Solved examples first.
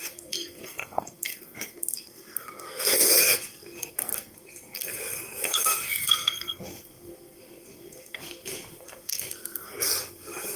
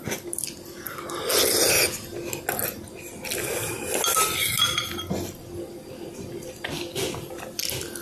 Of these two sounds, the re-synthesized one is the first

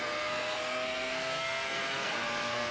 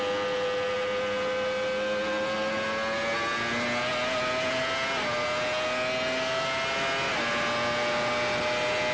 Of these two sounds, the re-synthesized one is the first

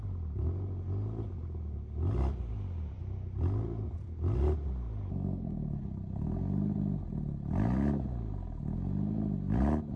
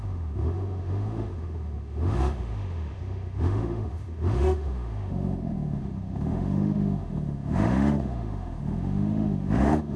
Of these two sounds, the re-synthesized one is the second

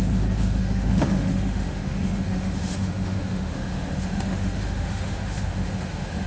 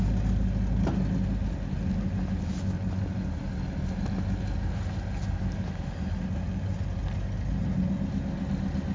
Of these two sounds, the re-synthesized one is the first